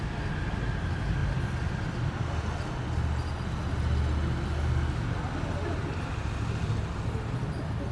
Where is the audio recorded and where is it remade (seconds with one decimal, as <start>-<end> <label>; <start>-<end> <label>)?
0.0-7.9 recorded